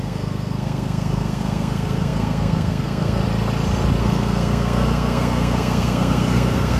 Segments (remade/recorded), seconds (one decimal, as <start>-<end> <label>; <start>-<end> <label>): 0.0-3.2 remade; 3.2-4.0 recorded; 4.0-6.8 remade